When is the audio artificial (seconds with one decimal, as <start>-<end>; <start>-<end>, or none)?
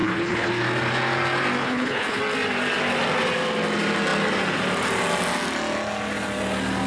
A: 0.0-0.5; 1.6-2.2